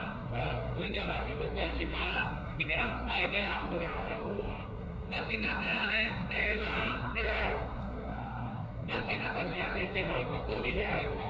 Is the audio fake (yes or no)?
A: yes